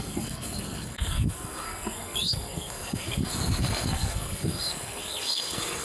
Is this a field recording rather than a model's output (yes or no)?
no